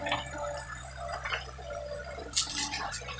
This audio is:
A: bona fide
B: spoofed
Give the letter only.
A